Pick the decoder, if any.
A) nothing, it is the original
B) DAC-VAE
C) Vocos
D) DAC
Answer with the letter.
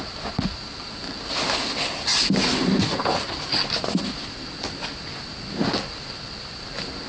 A